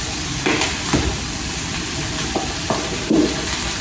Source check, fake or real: fake